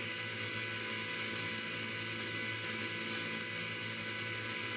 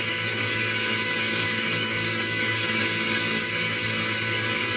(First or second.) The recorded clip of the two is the first